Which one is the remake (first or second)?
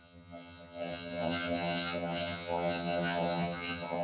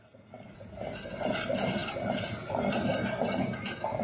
first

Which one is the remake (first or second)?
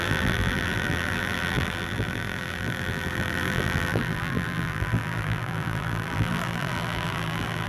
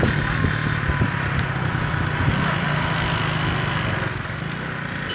first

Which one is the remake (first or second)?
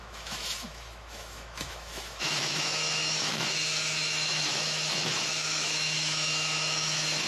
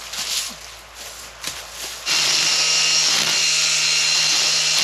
first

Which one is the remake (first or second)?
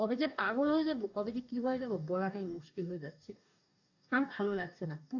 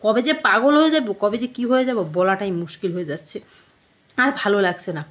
first